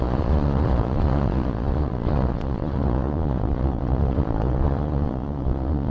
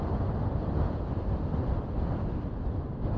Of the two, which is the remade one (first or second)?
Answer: first